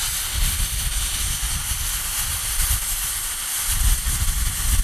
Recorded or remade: recorded